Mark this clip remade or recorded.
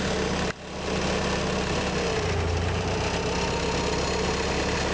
recorded